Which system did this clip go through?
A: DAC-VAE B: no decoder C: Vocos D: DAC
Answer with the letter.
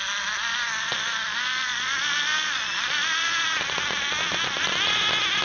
B